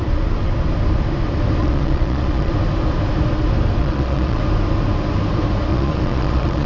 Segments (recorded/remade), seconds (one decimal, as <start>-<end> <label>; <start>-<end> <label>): 0.0-1.6 recorded; 1.6-2.5 remade; 2.5-3.8 recorded; 3.8-4.4 remade; 4.4-5.7 recorded; 5.7-6.7 remade